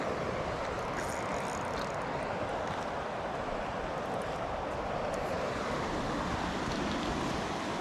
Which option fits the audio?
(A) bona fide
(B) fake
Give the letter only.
A